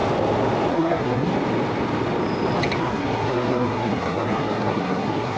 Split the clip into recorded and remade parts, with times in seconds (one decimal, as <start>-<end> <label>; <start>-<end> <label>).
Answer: 0.0-0.7 recorded; 0.7-1.3 remade; 1.3-2.8 recorded; 2.8-5.4 remade

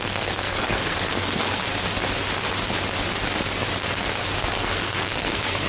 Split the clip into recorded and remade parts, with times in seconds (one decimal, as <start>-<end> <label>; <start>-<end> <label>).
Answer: 0.0-1.6 remade; 1.6-4.5 recorded; 4.5-5.7 remade